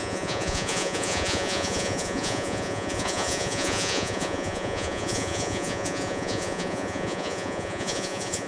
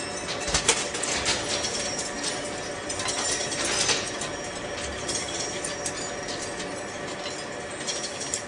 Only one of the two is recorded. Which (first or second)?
second